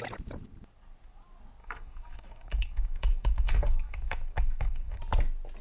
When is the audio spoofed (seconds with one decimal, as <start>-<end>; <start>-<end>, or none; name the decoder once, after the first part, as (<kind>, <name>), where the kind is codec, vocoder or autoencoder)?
1.6-5.0 (codec, DAC)

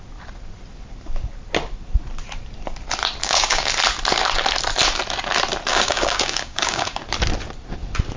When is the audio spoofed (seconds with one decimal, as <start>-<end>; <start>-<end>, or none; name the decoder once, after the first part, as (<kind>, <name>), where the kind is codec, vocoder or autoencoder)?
3.2-3.7 (codec, DAC); 5.7-7.0

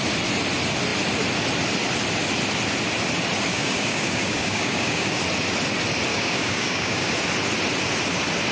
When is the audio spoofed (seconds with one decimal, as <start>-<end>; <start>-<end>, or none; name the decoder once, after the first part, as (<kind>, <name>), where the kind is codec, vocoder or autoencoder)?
3.5-5.2 (codec, DAC); 6.1-7.1

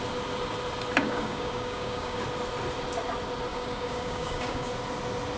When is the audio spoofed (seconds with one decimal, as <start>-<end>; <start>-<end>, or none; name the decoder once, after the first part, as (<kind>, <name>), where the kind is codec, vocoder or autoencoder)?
1.0-2.2 (codec, DAC); 3.5-4.7

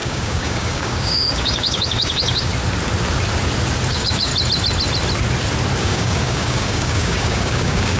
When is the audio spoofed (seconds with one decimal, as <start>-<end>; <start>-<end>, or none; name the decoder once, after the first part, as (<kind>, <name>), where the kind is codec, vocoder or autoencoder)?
0.0-2.5 (codec, DAC); 3.9-4.3; 5.8-8.0

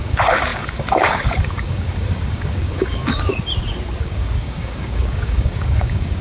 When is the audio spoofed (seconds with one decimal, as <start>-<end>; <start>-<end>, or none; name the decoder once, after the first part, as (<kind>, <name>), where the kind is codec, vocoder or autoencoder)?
0.0-3.3 (codec, DAC); 4.0-6.2

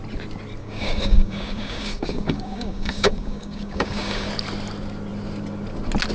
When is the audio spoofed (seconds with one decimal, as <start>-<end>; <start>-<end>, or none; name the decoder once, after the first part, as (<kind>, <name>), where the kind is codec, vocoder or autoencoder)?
0.6-4.3 (codec, DAC)

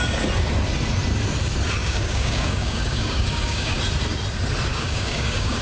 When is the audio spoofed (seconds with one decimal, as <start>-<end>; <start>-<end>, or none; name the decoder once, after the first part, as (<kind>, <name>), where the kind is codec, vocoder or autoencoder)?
1.8-3.8 (codec, DAC); 4.7-5.6